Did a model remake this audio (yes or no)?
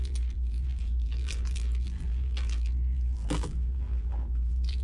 yes